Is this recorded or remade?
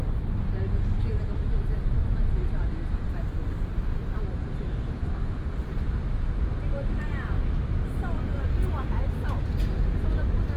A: recorded